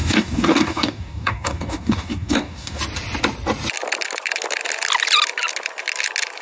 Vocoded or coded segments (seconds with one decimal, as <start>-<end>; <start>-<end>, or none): 0.0-2.8